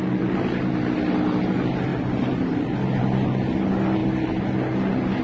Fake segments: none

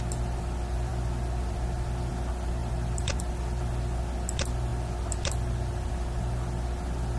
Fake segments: 2.6-3.2 (vocoder, BigVGAN v2)